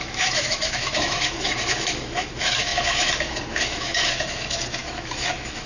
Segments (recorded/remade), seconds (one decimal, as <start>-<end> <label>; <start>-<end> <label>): 0.0-5.7 remade